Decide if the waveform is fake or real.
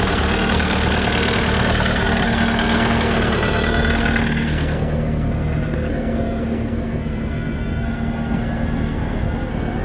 fake